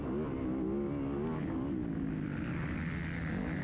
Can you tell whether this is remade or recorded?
recorded